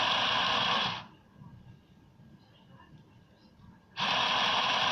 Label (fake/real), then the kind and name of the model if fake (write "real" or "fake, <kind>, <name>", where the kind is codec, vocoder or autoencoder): fake, vocoder, BigVGAN v2